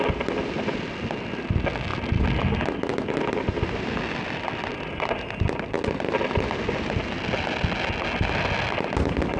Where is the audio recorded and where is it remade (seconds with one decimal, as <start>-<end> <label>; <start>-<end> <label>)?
0.0-9.4 recorded